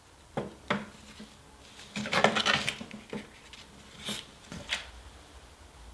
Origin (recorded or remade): recorded